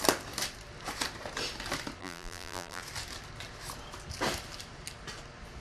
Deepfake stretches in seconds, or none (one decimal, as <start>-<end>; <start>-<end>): 2.0-2.8